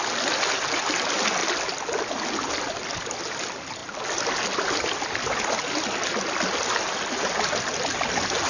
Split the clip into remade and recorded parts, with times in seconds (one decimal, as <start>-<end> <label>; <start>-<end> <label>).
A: 0.0-8.5 recorded